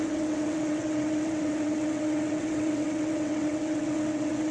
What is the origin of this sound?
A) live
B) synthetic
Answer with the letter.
B